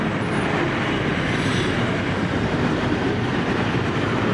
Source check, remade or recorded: recorded